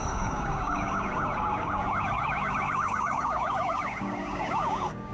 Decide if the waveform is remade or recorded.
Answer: remade